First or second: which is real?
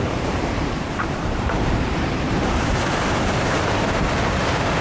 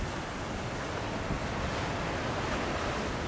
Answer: second